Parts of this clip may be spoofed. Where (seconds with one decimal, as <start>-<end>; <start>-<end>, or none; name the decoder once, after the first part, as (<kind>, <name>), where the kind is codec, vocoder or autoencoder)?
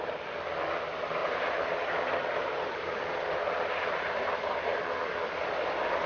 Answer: 1.2-2.0 (vocoder, BigVGAN v2); 2.4-4.8